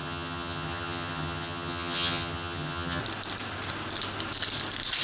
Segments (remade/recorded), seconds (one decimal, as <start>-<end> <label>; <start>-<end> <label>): 0.0-3.0 remade; 3.0-5.0 recorded